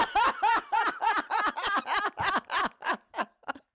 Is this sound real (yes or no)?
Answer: yes